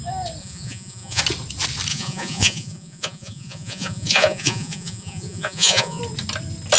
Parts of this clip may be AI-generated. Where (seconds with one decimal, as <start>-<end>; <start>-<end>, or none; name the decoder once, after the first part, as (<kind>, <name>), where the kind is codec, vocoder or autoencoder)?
0.4-1.2 (vocoder, Vocos); 1.9-6.0